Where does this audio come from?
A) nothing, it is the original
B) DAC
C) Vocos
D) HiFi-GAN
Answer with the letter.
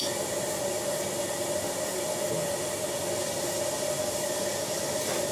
A